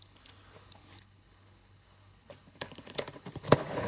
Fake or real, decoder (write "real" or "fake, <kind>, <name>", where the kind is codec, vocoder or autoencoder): fake, codec, HILCodec